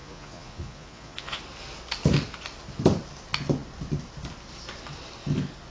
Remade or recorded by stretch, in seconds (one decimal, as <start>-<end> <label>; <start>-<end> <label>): 0.0-1.4 remade; 1.4-5.7 recorded